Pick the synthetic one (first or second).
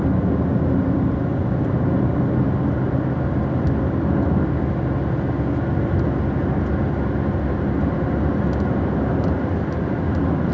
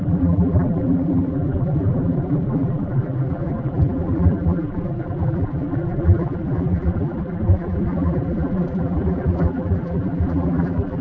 second